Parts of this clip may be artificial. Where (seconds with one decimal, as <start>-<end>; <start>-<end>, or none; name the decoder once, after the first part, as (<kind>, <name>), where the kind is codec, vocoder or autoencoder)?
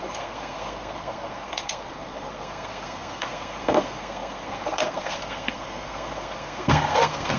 0.0-7.4 (codec, SNAC)